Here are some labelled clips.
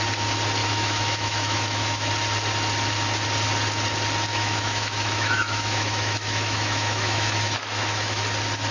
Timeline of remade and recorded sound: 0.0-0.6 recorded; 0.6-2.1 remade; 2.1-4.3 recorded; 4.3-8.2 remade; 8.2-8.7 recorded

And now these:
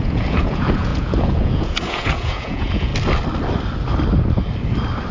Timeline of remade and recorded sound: 0.0-2.9 remade; 2.9-5.1 recorded

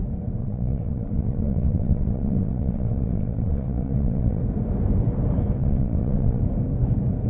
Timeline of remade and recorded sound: 0.0-0.4 recorded; 0.4-4.4 remade; 4.4-5.6 recorded; 5.6-6.4 remade; 6.4-7.3 recorded